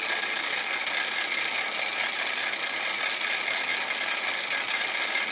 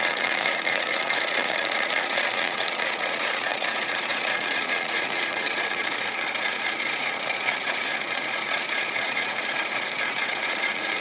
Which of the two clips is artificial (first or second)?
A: second